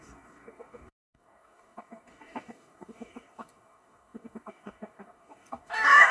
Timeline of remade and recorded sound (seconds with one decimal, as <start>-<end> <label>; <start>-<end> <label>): 0.0-6.1 remade